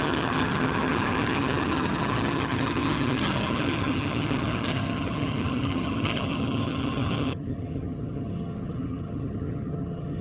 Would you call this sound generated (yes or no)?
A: yes